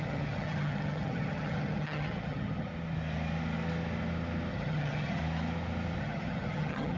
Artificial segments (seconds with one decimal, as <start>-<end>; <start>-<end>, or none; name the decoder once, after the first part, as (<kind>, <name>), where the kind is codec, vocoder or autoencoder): 0.0-2.7 (vocoder, HiFi-GAN); 4.5-5.2; 6.0-7.0